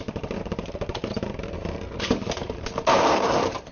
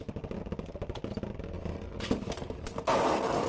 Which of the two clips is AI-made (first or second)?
first